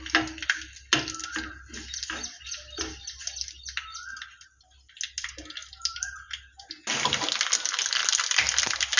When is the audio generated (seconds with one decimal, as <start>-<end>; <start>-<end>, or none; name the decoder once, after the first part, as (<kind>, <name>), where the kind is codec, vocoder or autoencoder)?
5.6-6.7 (vocoder, BigVGAN v2)